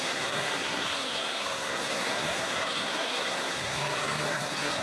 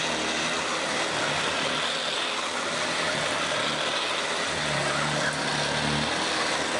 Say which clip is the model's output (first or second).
first